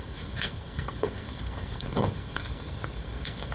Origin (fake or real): fake